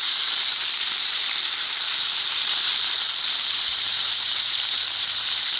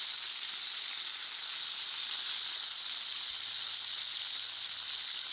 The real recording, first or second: second